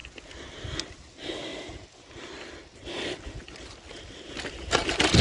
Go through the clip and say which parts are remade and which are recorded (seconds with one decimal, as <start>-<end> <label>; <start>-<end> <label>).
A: 0.0-5.2 recorded